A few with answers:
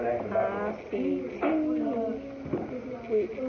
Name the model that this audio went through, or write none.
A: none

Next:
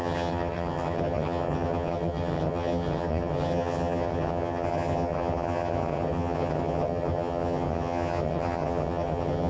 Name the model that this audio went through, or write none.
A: vocoder, HiFi-GAN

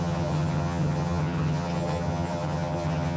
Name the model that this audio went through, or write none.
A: vocoder, HiFi-GAN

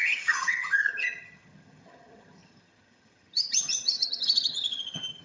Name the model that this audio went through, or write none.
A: vocoder, HiFi-GAN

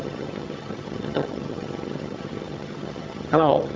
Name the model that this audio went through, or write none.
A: vocoder, HiFi-GAN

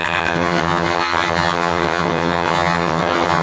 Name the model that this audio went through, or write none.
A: vocoder, HiFi-GAN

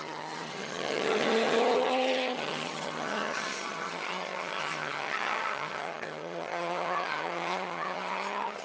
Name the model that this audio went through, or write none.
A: vocoder, HiFi-GAN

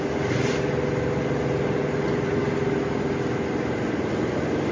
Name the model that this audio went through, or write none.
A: none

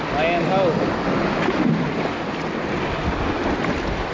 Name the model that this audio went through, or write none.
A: none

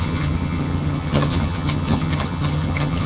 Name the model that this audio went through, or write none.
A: vocoder, HiFi-GAN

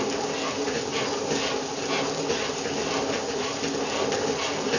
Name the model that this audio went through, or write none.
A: none